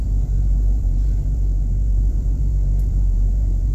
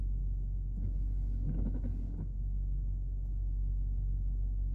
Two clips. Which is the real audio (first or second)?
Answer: second